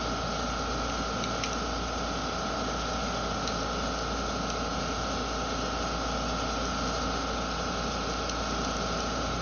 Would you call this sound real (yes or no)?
yes